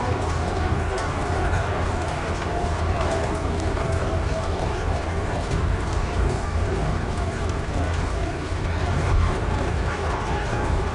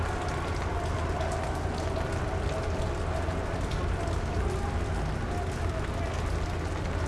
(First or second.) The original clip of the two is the second